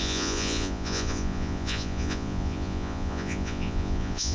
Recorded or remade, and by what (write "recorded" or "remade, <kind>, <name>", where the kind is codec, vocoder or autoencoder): remade, vocoder, Vocos